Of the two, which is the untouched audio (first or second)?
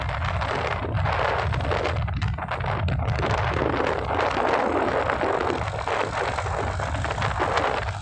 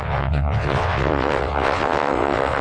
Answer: first